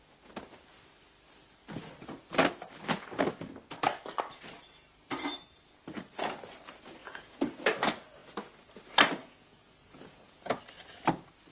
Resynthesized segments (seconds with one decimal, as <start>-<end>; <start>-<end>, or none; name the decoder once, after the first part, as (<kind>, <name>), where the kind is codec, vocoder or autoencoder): 7.0-7.5 (vocoder, Vocos); 9.2-10.6